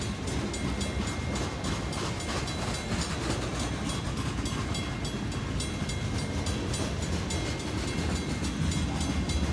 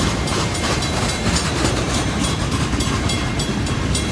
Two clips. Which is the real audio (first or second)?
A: first